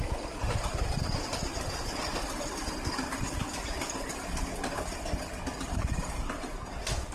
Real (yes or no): yes